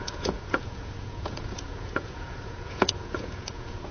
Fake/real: fake